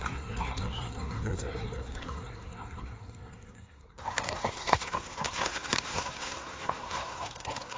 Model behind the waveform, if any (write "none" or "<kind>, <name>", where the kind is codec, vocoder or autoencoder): codec, SNAC